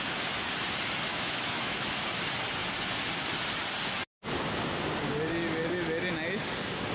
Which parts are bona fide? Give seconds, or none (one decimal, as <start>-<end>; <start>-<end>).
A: 0.0-1.1; 1.9-6.9